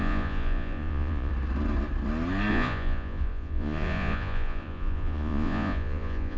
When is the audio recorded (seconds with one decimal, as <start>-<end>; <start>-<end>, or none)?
1.3-2.5